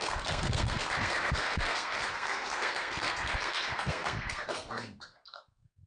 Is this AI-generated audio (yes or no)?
yes